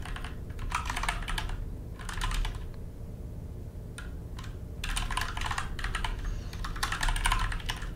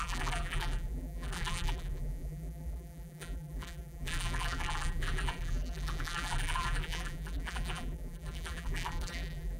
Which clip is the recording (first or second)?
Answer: first